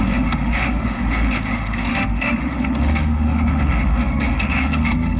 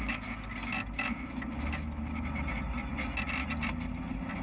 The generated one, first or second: first